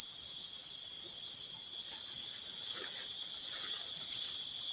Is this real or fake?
real